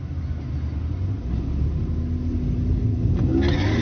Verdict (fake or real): real